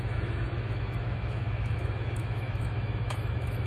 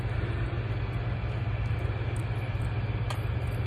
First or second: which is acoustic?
second